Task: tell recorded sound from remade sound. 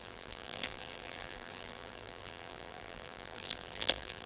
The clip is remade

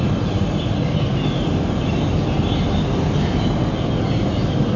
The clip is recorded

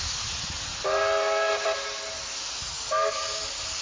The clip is recorded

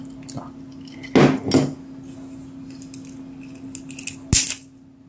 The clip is recorded